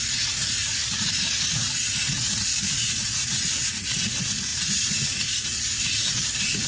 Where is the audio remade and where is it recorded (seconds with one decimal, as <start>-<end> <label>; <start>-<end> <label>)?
0.0-6.7 remade